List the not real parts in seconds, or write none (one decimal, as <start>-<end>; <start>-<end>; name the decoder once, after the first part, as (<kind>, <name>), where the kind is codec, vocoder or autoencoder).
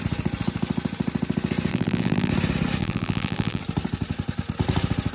1.7-2.3 (vocoder, BigVGAN v2); 2.8-3.6